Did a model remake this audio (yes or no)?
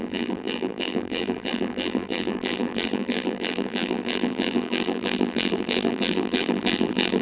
yes